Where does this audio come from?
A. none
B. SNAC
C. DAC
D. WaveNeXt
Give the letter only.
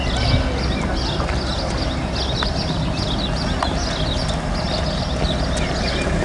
A